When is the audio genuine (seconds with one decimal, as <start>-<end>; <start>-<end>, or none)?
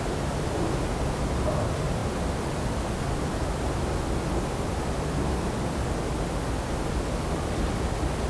0.0-8.3